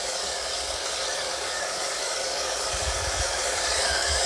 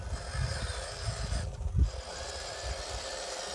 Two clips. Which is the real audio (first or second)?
second